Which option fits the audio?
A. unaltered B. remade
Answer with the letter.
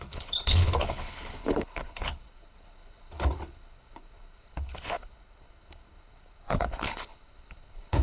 B